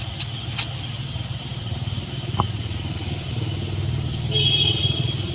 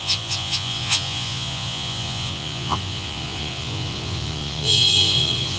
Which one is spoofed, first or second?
second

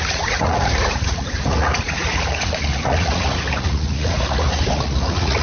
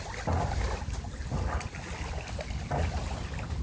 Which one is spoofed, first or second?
first